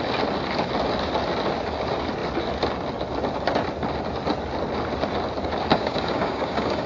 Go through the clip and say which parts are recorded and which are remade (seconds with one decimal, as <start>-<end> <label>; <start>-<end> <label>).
0.0-5.7 recorded; 5.7-6.9 remade